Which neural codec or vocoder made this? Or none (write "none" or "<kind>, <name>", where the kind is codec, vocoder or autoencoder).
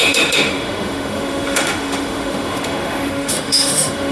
autoencoder, DAC-VAE